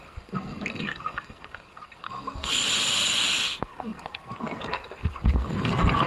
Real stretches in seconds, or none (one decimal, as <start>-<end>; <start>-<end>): 2.6-3.4

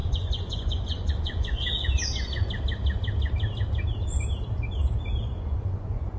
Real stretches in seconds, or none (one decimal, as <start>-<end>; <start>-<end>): 1.6-5.3

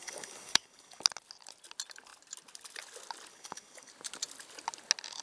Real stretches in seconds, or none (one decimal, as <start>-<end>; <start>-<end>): 1.0-3.3; 3.9-5.2

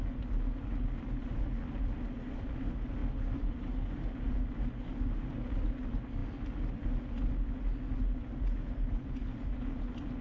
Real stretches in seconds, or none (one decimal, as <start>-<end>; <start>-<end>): 0.0-10.2

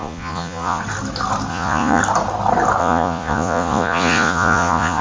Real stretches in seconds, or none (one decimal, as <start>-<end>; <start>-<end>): 0.8-1.5; 2.0-2.8